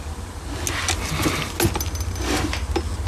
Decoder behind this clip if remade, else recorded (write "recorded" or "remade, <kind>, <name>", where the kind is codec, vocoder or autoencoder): recorded